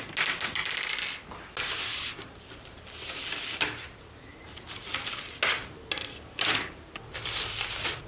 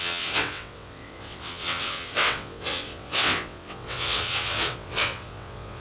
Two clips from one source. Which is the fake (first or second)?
second